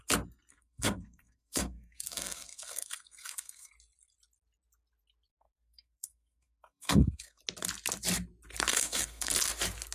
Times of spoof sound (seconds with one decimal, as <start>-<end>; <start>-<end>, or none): 0.5-3.7; 5.3-7.4; 8.7-9.3